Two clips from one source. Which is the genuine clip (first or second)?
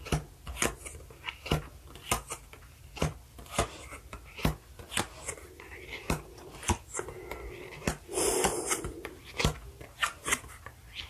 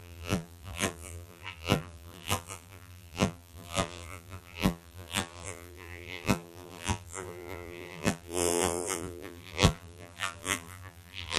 first